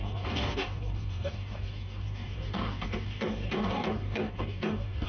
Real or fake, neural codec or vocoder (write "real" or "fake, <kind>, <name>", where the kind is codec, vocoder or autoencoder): fake, codec, DAC